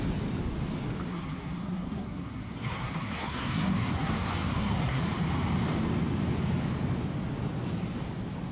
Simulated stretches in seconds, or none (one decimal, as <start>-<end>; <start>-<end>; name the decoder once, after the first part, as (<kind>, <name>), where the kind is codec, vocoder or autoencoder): 1.1-5.0 (codec, SNAC)